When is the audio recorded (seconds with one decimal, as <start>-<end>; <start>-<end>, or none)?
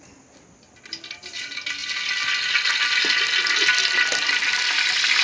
0.0-5.2